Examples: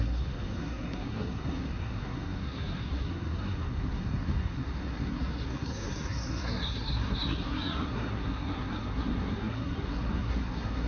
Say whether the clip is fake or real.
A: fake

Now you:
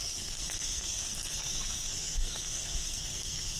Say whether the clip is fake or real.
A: fake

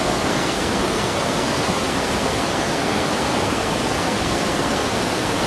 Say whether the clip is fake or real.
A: fake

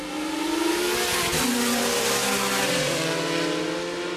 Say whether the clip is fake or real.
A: real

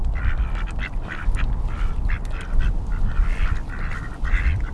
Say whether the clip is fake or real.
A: real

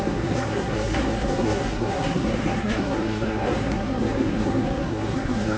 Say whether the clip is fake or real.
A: fake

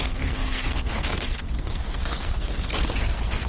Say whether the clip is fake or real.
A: fake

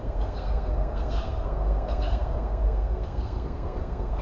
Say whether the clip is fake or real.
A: fake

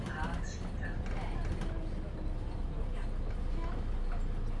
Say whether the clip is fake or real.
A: real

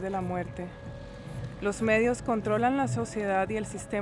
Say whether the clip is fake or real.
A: real